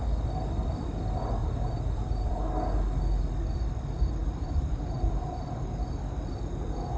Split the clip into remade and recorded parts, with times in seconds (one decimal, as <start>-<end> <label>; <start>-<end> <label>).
0.0-1.4 recorded; 1.4-2.3 remade; 2.3-4.2 recorded; 4.2-7.0 remade